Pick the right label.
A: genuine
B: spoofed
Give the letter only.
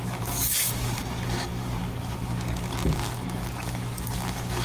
B